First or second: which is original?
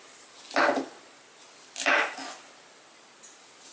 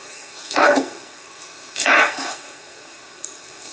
first